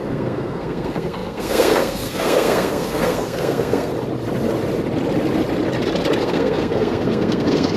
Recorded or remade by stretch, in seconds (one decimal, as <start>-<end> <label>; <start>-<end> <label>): 0.0-3.9 remade; 3.9-6.2 recorded; 6.2-7.8 remade